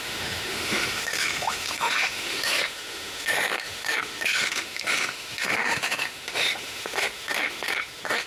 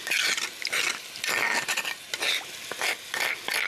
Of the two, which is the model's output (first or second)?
first